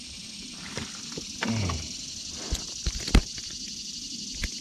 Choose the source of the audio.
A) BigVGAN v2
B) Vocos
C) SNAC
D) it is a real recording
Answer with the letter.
D